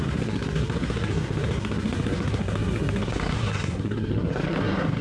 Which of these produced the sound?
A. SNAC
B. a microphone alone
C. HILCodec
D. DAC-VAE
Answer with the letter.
A